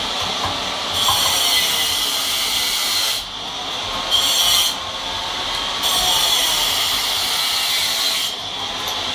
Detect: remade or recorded recorded